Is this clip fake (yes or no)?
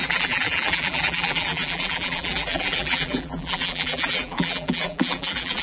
yes